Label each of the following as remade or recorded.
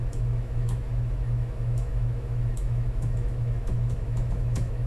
remade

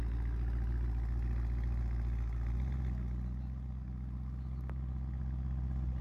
recorded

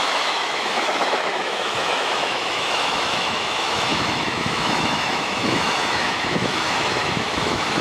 remade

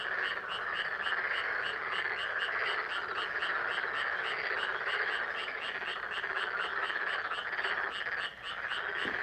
recorded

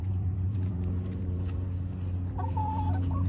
remade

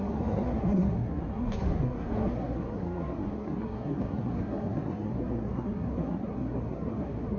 remade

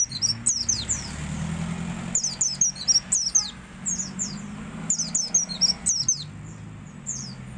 recorded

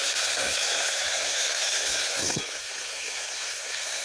remade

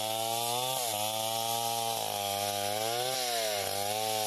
recorded